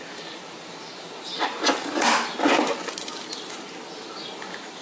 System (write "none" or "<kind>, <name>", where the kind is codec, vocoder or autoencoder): none